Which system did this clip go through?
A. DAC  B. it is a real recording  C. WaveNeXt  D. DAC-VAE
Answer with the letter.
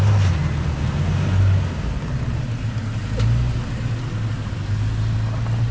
B